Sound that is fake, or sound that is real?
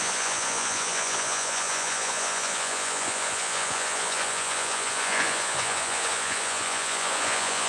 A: fake